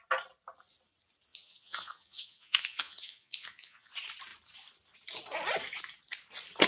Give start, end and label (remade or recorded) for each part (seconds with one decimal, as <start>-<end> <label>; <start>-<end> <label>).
0.0-1.3 recorded; 1.3-3.9 remade; 3.9-6.7 recorded